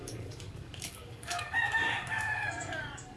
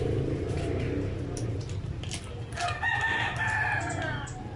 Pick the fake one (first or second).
first